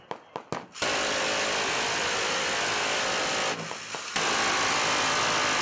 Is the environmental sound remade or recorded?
recorded